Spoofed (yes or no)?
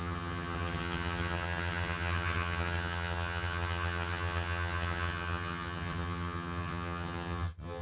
yes